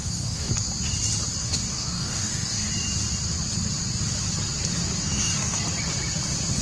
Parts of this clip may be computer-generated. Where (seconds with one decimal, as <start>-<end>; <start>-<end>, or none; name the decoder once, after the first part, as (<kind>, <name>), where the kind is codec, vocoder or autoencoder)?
0.0-0.5 (codec, DAC); 1.4-2.7; 5.0-5.6